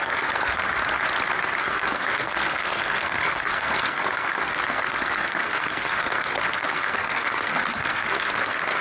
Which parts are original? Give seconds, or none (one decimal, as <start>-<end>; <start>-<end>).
0.6-1.6